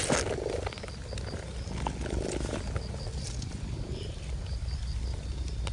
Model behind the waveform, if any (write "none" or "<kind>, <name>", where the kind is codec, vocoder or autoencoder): none